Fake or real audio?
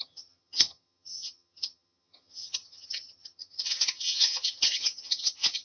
fake